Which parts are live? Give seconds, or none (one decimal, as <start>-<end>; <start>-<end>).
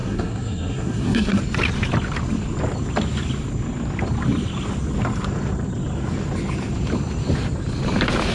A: 1.4-8.3